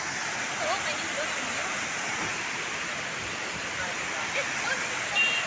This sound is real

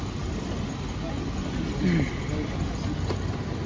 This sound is real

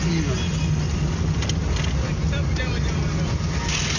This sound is real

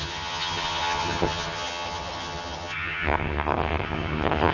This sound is fake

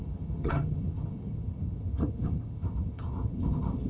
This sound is fake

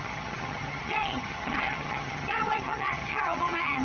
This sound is fake